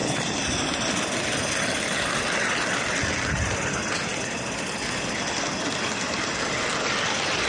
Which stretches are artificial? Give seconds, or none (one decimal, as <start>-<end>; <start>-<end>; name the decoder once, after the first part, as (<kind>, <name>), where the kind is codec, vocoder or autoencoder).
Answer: none